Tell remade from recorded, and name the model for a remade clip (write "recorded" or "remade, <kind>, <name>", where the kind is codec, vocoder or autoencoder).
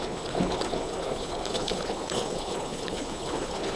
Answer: remade, codec, HILCodec